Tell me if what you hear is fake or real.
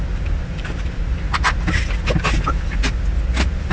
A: real